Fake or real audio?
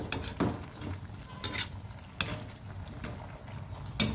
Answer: real